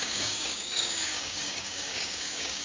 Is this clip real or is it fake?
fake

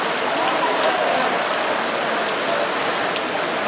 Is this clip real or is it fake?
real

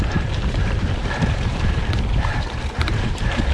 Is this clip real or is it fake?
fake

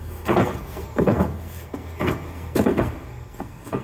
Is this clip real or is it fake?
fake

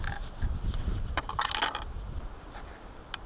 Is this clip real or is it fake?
real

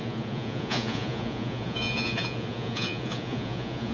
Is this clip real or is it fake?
fake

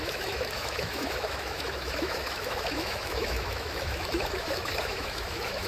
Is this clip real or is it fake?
fake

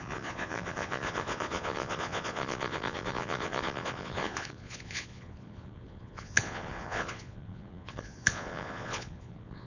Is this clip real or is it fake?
fake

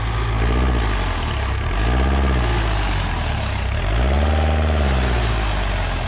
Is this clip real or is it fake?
real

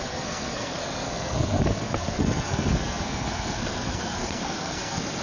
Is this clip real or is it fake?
fake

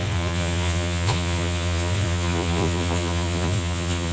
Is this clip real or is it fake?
fake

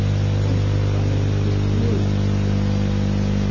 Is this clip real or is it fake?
real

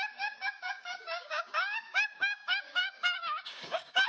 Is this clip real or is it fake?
fake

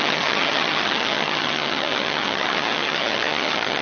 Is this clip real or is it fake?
fake